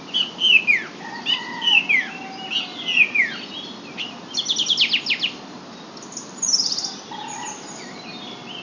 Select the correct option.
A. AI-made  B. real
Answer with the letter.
B